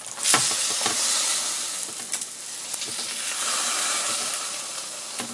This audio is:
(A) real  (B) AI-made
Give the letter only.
A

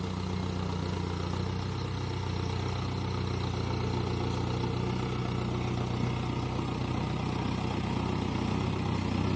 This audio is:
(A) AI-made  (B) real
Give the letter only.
B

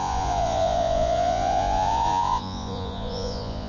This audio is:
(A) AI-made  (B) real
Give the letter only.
A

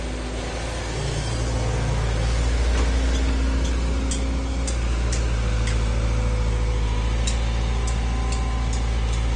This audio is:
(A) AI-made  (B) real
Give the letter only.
B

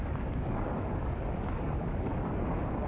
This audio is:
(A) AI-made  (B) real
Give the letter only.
A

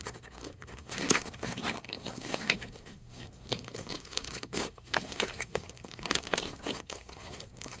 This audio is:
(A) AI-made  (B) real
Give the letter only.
A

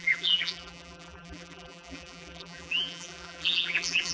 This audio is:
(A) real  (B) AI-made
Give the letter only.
B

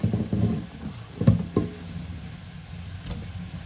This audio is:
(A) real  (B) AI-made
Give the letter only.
A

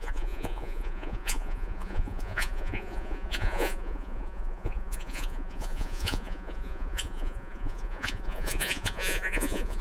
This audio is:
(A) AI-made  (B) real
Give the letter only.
A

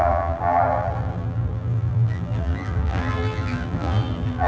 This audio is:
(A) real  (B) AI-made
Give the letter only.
B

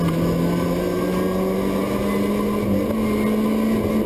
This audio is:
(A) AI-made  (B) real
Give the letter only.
B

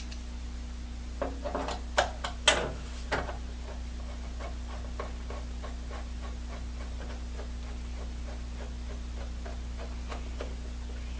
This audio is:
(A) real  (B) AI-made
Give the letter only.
A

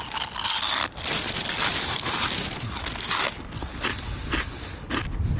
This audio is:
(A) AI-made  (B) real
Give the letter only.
B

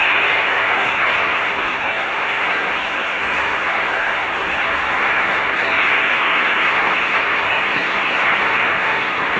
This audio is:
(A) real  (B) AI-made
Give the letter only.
B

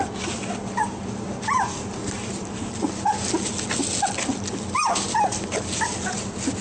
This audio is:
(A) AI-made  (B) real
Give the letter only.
B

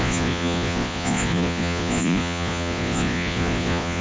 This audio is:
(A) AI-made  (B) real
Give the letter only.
A